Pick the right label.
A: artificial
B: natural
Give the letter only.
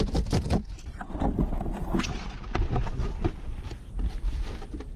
B